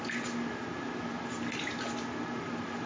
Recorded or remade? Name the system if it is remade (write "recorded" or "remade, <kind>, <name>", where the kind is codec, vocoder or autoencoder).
recorded